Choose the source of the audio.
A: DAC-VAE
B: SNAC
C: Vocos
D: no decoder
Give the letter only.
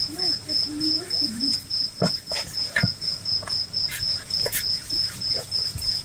C